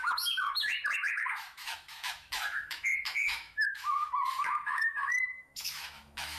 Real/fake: fake